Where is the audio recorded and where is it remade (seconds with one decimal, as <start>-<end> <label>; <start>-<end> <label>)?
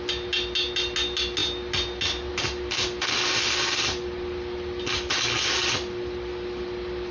0.0-7.1 recorded